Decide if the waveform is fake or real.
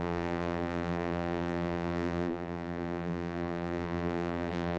fake